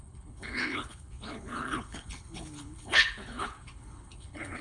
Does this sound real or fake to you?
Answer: fake